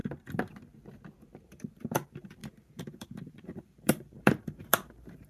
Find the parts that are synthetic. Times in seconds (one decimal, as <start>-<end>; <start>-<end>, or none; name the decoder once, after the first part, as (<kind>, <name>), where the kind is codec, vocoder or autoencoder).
1.2-5.3 (vocoder, BigVGAN v2)